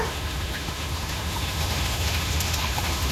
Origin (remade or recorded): remade